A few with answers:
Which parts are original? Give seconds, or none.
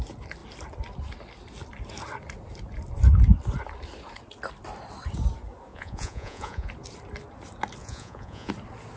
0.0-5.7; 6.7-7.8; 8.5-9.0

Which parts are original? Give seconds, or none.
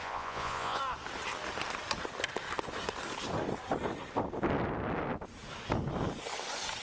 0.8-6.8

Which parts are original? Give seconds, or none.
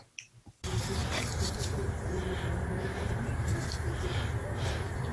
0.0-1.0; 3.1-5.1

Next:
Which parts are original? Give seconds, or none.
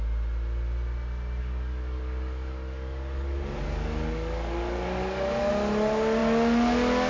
0.0-1.4; 5.5-7.1